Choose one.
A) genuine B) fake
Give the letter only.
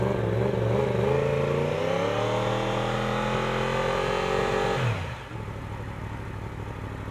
A